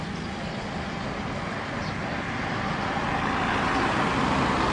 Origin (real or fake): real